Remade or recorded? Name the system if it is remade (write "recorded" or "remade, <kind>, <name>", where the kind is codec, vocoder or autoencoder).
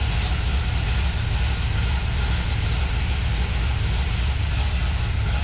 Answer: recorded